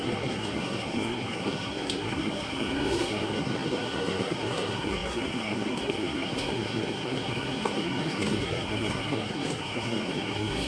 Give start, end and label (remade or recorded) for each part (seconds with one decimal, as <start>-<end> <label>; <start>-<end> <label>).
0.0-10.7 remade